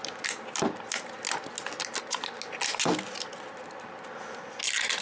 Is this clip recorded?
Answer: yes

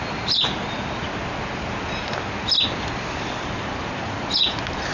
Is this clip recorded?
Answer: yes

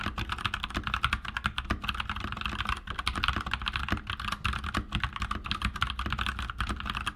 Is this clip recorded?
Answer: yes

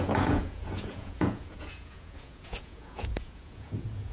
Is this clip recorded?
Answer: no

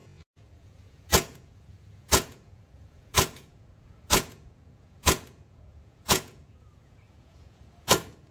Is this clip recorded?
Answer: no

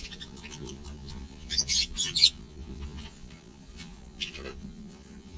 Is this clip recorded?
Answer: no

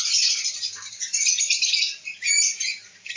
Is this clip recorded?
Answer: no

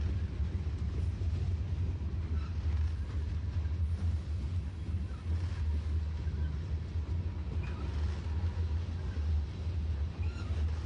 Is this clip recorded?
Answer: yes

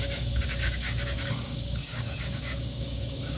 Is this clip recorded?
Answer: no